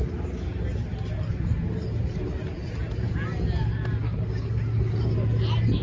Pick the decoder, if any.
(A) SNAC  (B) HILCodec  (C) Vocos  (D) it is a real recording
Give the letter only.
D